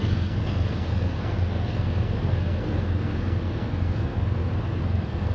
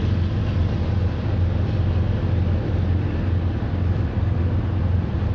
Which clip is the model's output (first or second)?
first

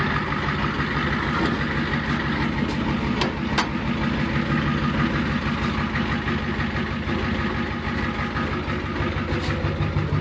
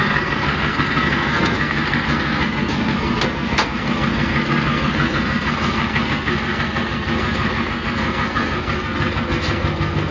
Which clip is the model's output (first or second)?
second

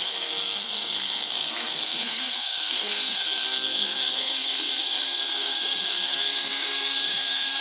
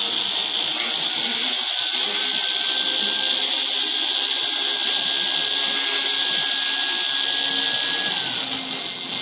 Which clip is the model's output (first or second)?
first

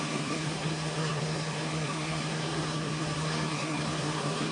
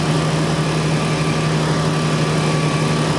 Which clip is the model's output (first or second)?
first